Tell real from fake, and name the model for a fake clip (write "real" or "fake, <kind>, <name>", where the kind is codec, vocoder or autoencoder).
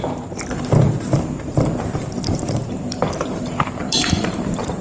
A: fake, vocoder, BigVGAN v2